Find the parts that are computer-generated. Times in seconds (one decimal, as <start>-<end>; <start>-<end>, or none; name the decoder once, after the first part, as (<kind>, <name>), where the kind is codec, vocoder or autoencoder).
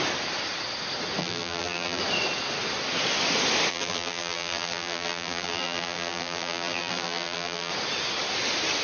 1.2-2.0 (vocoder, BigVGAN v2); 3.7-7.7